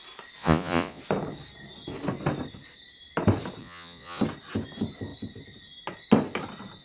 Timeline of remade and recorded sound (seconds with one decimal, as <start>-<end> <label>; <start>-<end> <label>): 0.0-0.4 recorded; 0.4-1.0 remade; 1.0-3.6 recorded; 3.6-4.2 remade; 4.2-6.8 recorded